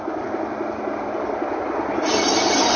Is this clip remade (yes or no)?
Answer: no